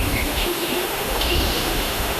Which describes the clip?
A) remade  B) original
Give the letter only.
A